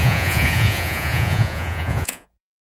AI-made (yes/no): yes